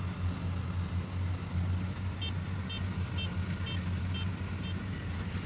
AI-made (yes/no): no